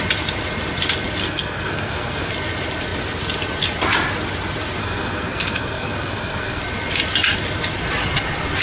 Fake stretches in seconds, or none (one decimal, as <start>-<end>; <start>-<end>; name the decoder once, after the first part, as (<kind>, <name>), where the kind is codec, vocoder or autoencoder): 1.2-2.3 (codec, SNAC); 4.8-6.6